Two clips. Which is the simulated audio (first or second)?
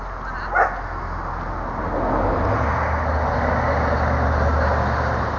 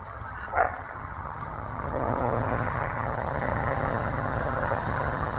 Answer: second